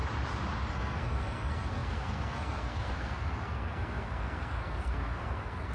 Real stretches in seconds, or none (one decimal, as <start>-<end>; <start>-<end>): 0.0-0.7